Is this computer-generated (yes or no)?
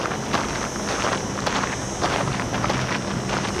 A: no